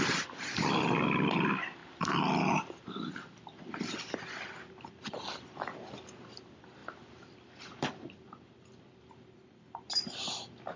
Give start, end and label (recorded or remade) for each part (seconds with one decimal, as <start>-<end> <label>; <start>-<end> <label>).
0.0-1.8 recorded; 1.8-5.1 remade; 5.1-6.8 recorded; 6.8-9.1 remade; 9.1-10.8 recorded

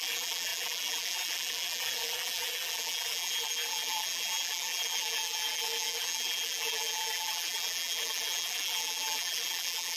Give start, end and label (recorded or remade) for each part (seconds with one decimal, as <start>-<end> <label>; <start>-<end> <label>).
0.0-10.0 remade

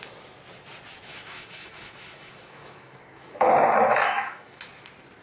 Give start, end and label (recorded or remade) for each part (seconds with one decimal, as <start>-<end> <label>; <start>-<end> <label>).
0.0-1.1 recorded; 1.1-3.5 remade; 3.5-3.9 recorded; 3.9-4.6 remade; 4.6-5.2 recorded

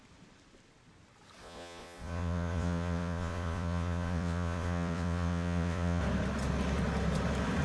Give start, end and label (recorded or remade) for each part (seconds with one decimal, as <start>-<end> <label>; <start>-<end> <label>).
0.0-1.4 recorded; 1.4-6.0 remade; 6.0-7.6 recorded

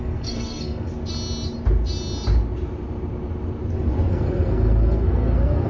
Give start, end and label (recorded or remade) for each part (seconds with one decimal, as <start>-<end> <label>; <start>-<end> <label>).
0.0-0.9 remade; 0.9-4.1 recorded; 4.1-5.7 remade

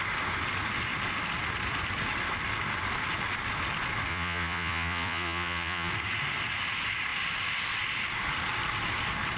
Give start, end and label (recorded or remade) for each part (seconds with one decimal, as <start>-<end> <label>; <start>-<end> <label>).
0.0-4.1 recorded; 4.1-5.9 remade; 5.9-9.4 recorded

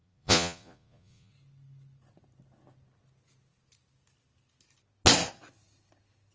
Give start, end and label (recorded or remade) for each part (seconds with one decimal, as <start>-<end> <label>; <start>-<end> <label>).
0.0-1.3 remade; 1.3-6.3 recorded